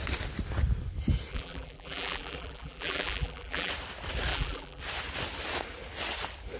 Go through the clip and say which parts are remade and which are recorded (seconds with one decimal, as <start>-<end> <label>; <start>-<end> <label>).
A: 0.0-1.3 recorded; 1.3-3.7 remade; 3.7-4.3 recorded; 4.3-4.8 remade; 4.8-6.6 recorded